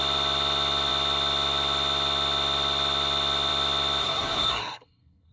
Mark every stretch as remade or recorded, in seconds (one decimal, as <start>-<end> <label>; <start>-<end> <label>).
0.0-4.0 recorded; 4.0-5.3 remade